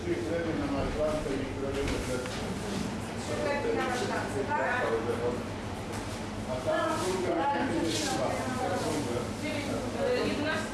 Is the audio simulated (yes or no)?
no